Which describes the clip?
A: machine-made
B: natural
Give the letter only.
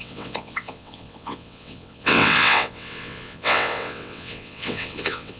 A